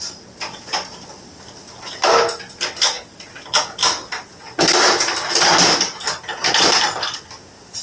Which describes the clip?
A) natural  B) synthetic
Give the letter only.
A